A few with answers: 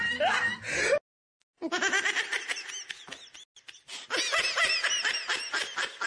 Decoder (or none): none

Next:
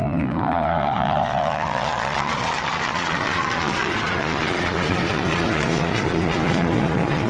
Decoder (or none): vocoder, Vocos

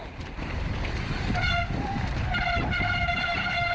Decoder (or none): none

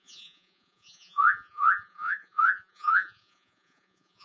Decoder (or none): vocoder, Vocos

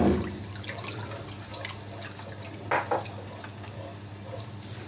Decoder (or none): none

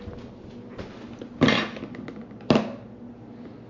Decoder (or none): none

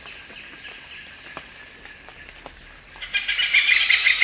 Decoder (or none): none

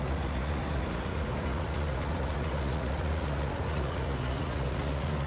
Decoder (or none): vocoder, Vocos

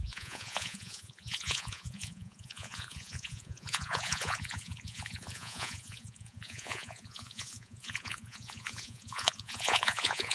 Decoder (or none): vocoder, Vocos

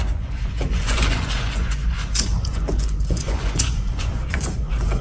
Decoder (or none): vocoder, Vocos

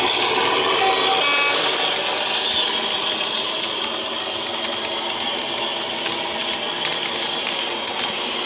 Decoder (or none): none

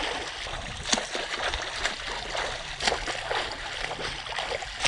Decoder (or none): none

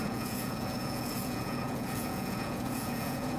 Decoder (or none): vocoder, Vocos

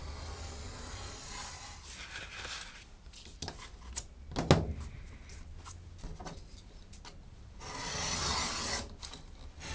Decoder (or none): none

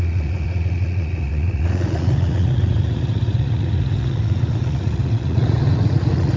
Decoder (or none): vocoder, Vocos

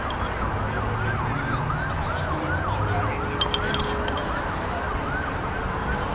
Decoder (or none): none